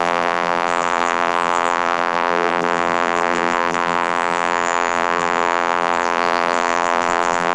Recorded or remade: remade